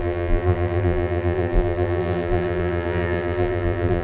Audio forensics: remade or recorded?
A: remade